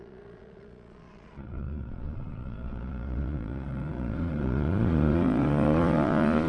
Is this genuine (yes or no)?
no